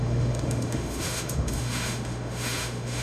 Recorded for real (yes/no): no